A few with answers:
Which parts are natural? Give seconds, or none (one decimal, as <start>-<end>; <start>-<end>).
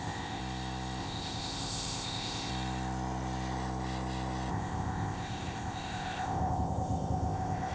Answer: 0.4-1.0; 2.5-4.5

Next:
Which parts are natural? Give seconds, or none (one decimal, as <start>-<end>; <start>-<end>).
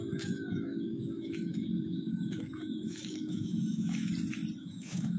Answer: 4.1-4.6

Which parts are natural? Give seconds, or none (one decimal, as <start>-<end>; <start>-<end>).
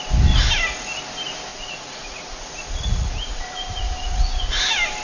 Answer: 0.0-1.5; 4.5-5.0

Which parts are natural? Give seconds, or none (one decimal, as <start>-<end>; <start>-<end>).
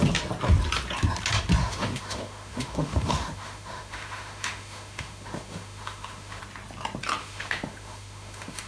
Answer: 0.0-1.6; 6.4-7.2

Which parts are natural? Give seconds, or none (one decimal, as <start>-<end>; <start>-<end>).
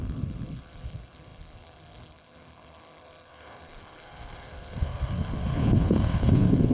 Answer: none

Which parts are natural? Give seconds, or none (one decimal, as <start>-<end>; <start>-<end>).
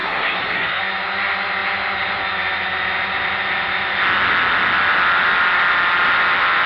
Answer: 0.8-6.7